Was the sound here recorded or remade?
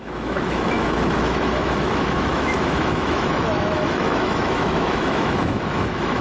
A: remade